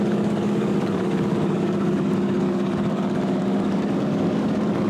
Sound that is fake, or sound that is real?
fake